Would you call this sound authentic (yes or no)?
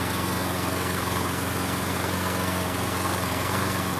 no